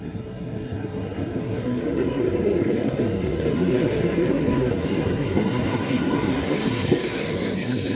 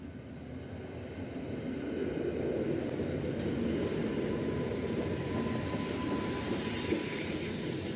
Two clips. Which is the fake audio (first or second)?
first